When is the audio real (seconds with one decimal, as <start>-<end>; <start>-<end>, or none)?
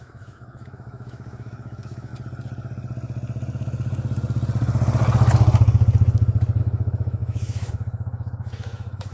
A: 2.1-6.6